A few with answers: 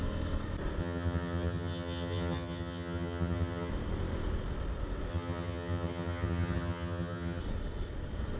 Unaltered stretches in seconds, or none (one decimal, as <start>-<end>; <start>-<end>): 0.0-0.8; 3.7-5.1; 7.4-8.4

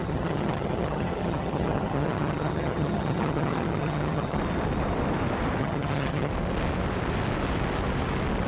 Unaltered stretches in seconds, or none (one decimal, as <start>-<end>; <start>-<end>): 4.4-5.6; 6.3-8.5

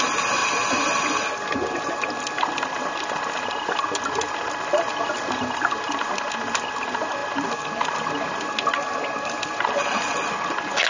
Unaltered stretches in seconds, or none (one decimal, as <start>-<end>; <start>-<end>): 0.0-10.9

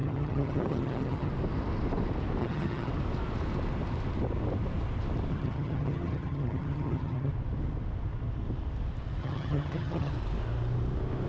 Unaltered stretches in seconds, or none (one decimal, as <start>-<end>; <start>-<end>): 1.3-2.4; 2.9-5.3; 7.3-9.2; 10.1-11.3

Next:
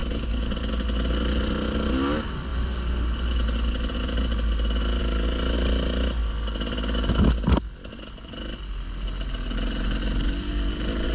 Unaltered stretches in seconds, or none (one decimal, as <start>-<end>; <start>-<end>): 0.0-11.1